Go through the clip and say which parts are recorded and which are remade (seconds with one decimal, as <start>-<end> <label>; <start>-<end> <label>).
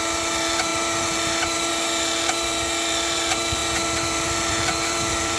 0.0-5.4 remade